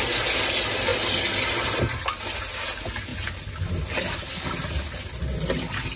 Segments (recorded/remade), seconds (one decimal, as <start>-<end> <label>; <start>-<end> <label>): 0.0-6.0 recorded